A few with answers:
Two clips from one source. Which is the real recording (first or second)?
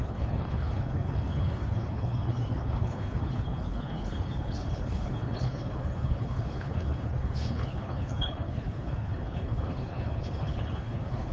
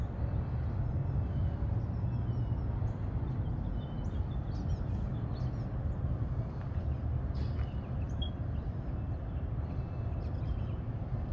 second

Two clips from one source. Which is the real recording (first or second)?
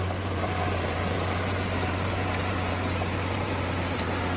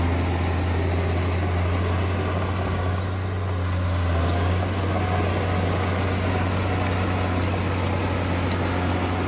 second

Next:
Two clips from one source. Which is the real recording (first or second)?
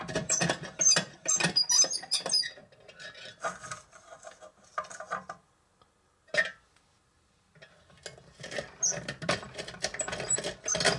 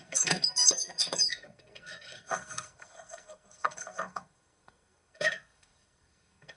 first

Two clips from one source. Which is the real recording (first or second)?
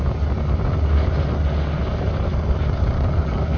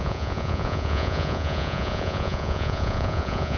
first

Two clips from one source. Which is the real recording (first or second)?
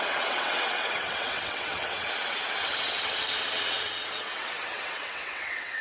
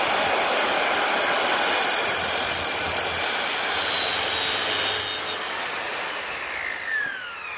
second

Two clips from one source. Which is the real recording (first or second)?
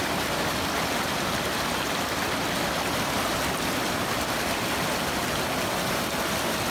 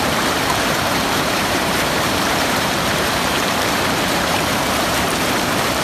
first